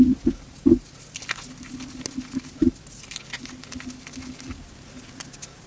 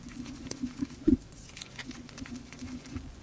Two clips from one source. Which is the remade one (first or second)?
second